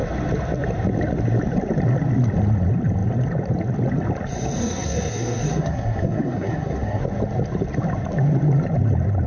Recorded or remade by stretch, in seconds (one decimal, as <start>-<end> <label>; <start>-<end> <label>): 0.0-4.6 recorded; 4.6-7.0 remade; 7.0-9.3 recorded